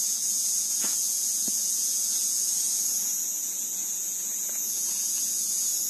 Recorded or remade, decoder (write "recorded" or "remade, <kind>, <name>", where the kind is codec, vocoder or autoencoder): remade, vocoder, Vocos